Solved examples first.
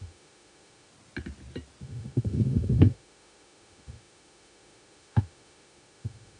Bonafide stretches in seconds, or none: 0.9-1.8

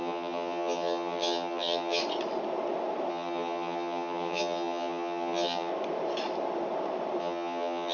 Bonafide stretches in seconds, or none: 2.0-3.1; 5.7-7.2

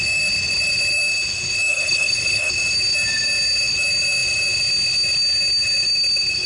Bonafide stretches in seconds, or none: 0.0-1.7; 2.5-6.5

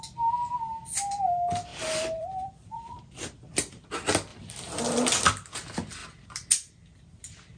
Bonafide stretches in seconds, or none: 0.0-1.7; 3.0-4.3; 4.8-7.6